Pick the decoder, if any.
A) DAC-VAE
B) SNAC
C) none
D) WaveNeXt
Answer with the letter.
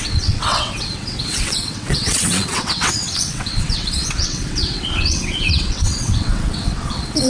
D